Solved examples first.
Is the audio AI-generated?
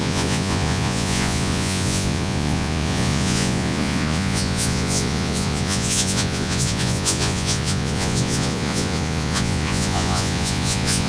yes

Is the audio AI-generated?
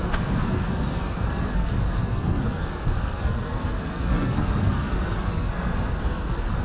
yes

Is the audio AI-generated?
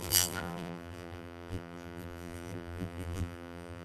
yes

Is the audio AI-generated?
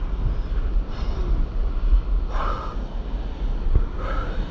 no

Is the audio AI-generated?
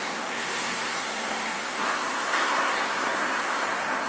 yes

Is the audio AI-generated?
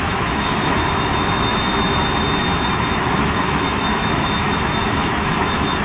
yes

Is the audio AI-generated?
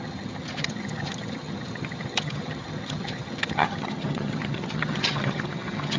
yes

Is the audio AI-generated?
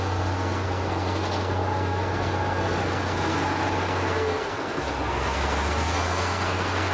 yes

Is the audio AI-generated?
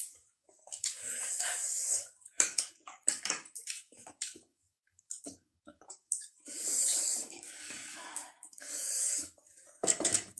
yes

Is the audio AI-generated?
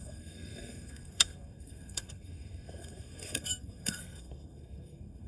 yes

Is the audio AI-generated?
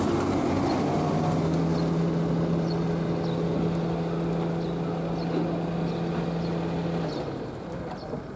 no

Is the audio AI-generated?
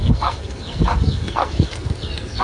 yes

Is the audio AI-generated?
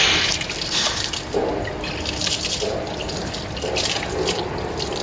no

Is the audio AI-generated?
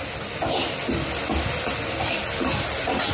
no